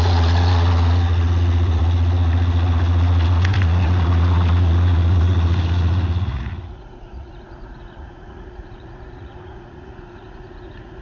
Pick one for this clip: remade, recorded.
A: remade